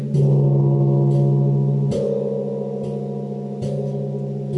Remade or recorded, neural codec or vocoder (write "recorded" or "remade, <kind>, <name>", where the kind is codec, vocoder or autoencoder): recorded